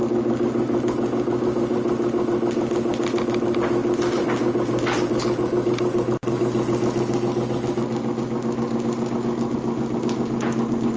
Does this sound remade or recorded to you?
recorded